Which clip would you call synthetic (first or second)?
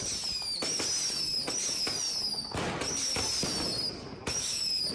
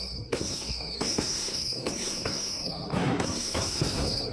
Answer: second